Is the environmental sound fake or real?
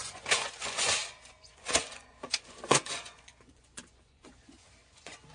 fake